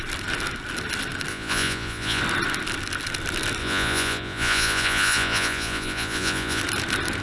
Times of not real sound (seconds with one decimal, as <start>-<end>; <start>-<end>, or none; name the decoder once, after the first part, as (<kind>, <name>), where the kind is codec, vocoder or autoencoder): 1.3-2.2 (vocoder, Vocos); 3.6-6.6

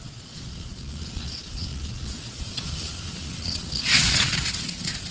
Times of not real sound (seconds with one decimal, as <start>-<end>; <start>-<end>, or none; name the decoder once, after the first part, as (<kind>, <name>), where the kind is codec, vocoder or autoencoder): 0.0-5.1 (vocoder, Vocos)

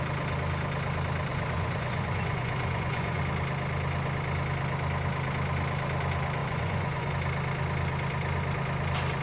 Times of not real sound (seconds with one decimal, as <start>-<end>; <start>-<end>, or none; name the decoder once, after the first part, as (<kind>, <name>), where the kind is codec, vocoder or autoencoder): 1.3-3.2 (vocoder, Vocos); 6.4-7.1